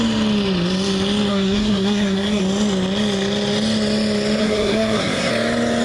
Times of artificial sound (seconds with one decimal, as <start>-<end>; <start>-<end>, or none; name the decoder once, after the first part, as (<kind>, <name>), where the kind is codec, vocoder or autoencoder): 1.3-2.4 (codec, SNAC); 4.4-5.3